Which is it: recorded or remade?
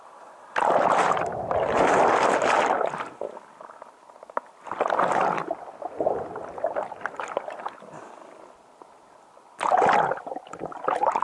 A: recorded